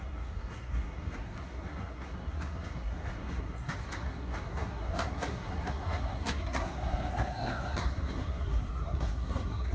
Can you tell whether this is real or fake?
fake